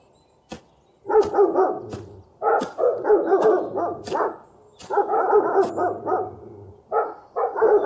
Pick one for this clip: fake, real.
real